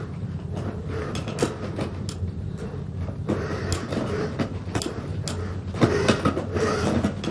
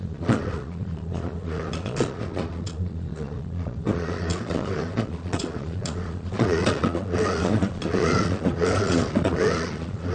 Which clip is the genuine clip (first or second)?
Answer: first